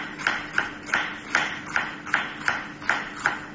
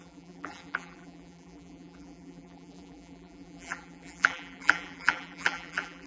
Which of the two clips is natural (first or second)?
first